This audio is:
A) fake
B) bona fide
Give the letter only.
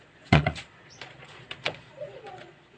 A